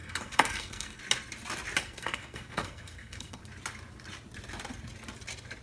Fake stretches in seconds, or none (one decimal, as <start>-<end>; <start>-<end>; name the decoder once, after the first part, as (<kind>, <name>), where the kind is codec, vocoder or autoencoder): 0.0-1.0 (codec, SNAC); 1.8-3.4